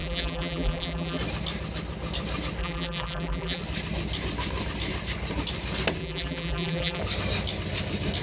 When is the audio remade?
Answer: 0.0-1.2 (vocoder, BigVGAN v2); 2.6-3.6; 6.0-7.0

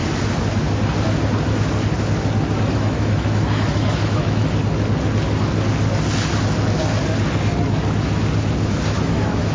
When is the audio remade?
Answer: 2.7-4.4 (autoencoder, DAC-VAE); 8.7-9.5

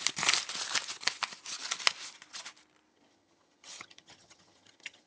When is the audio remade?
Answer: 2.9-5.1 (vocoder, HiFi-GAN)

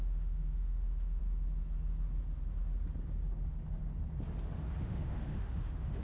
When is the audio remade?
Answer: 0.0-1.2 (autoencoder, DAC-VAE); 4.8-6.0

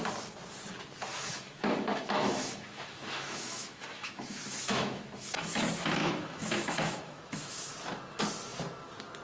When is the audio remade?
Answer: 1.1-5.6 (autoencoder, DAC-VAE); 6.0-7.7

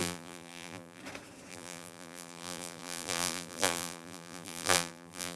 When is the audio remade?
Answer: 0.0-1.0 (vocoder, BigVGAN v2); 1.5-5.4